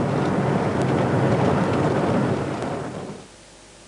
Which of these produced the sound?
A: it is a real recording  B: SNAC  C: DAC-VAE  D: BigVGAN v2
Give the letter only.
A